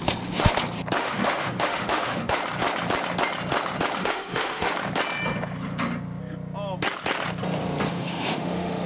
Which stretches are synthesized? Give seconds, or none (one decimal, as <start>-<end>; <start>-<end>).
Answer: 0.0-0.5; 1.0-2.4; 4.0-4.7; 7.9-8.9